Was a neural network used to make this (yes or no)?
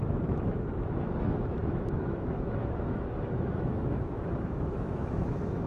yes